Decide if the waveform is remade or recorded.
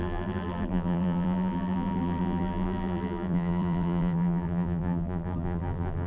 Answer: remade